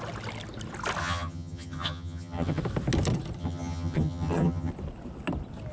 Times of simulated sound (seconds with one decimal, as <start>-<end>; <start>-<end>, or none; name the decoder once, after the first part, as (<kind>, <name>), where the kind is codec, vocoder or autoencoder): 1.0-2.6 (vocoder, HiFi-GAN); 3.4-4.7